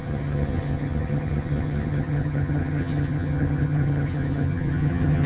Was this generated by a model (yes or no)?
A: yes